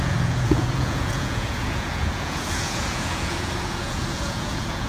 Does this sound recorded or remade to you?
remade